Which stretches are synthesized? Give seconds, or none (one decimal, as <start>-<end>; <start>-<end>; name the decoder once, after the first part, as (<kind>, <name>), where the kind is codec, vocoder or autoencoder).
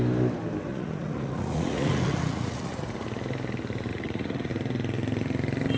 0.7-2.8 (vocoder, Vocos); 3.9-4.5